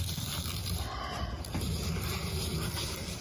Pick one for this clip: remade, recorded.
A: recorded